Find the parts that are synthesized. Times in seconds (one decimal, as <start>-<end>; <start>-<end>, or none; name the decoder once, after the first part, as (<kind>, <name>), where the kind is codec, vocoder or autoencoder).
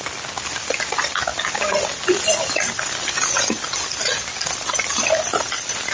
none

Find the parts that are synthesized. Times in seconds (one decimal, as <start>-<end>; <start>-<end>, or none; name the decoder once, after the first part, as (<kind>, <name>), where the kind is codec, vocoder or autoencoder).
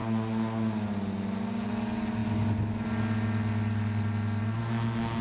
none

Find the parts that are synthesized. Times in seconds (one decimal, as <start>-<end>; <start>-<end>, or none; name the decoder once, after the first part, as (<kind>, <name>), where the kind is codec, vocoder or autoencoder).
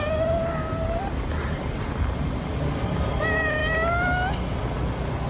none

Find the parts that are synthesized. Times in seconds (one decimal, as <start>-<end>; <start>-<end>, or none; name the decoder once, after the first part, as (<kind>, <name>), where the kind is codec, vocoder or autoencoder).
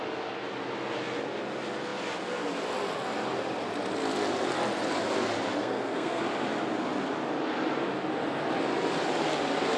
5.6-6.2 (codec, SNAC)